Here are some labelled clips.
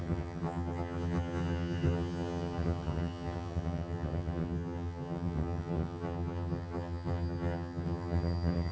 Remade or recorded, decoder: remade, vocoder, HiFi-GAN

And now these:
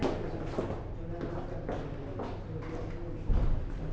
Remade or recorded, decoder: recorded